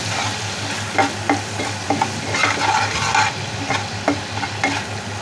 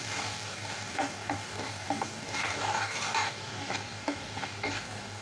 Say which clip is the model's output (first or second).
second